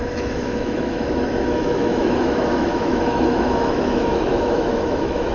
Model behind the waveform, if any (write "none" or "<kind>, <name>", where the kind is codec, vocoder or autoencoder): autoencoder, DAC-VAE